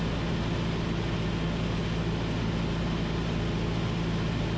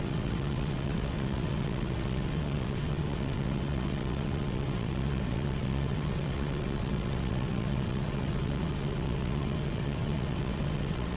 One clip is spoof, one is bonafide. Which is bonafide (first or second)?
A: first